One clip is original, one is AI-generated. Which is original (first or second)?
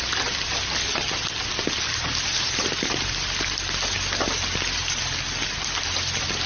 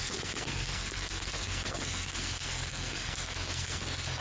first